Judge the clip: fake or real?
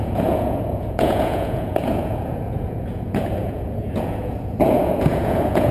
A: fake